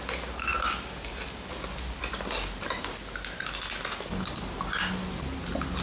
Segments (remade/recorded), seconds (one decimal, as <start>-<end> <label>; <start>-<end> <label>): 0.0-5.8 recorded

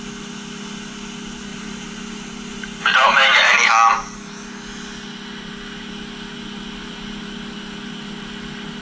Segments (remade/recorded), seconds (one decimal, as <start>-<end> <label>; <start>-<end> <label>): 0.0-1.5 recorded; 1.5-3.7 remade; 3.7-8.8 recorded

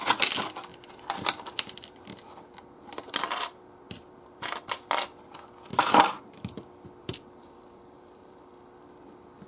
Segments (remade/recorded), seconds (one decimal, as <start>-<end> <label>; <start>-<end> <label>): 0.0-0.7 recorded; 0.7-4.8 remade; 4.8-5.7 recorded; 5.7-6.2 remade; 6.2-7.0 recorded; 7.0-8.5 remade; 8.5-9.5 recorded

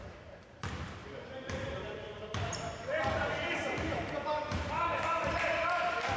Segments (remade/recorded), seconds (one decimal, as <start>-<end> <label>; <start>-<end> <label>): 0.0-6.2 remade